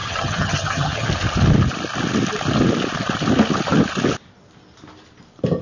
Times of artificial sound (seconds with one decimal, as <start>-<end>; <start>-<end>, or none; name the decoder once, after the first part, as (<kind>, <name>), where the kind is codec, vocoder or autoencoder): 0.0-1.1 (vocoder, HiFi-GAN)